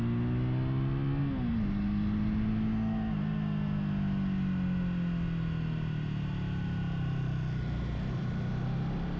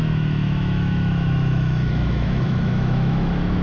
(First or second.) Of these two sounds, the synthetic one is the second